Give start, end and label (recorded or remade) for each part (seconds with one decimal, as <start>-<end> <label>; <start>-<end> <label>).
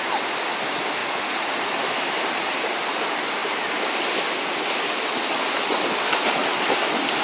0.0-1.0 recorded; 1.0-1.7 remade; 1.7-7.2 recorded